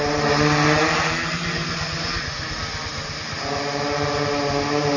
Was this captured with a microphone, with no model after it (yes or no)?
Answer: yes